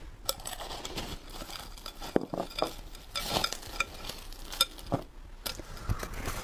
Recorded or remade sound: recorded